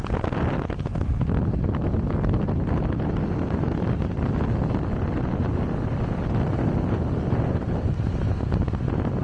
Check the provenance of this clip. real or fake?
real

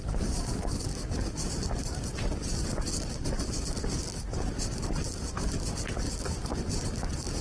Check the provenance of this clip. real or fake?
real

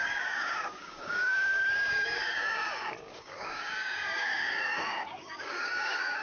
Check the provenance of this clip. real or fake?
fake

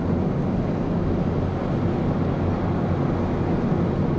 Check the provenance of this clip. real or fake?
real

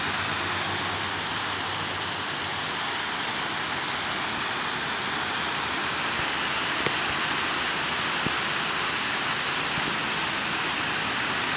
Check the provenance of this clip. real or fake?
real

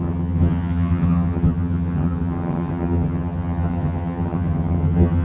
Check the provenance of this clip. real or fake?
fake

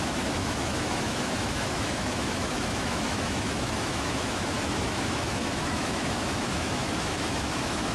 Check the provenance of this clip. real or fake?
fake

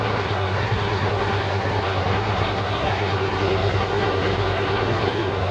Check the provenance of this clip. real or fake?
fake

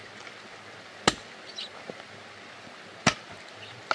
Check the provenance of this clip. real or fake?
real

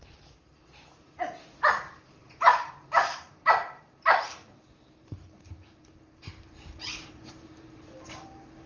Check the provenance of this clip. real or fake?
fake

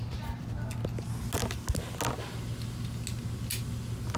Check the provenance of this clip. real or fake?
real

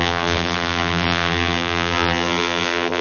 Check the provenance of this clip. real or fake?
fake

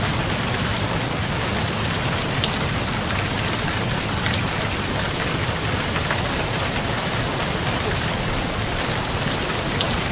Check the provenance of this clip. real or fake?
real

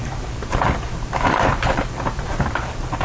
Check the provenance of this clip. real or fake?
fake